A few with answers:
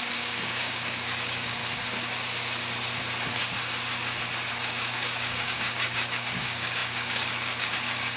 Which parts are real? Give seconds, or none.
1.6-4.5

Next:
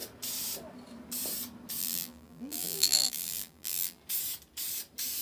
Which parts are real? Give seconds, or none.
0.0-1.8; 4.0-5.2